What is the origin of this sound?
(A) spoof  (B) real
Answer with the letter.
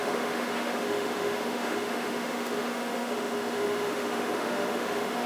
A